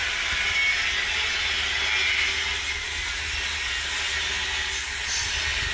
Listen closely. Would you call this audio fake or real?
real